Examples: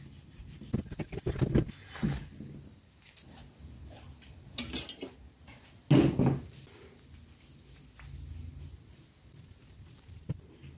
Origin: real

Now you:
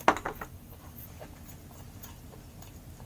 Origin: real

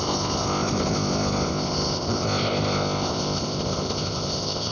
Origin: fake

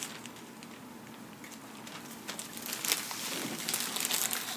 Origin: real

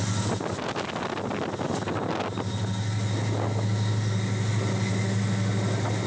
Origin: real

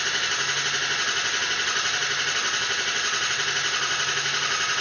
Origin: real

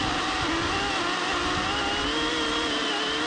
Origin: real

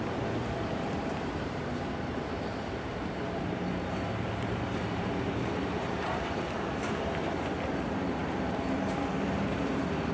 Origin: fake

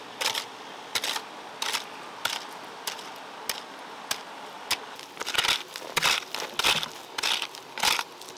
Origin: real